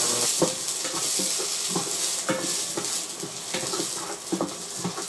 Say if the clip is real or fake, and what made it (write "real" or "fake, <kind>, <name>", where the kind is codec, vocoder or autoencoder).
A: real